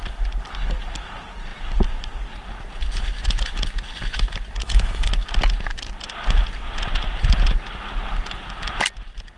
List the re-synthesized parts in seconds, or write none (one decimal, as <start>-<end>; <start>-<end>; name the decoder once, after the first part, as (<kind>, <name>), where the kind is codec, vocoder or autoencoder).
4.6-5.1 (codec, DAC)